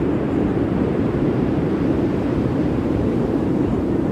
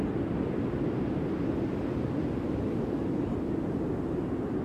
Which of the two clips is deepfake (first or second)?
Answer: first